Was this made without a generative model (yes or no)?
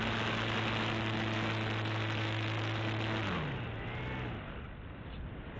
yes